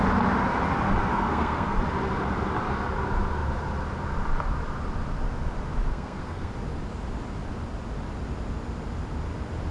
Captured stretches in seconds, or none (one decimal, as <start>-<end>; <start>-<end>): 0.0-1.1; 1.8-5.9; 6.5-9.7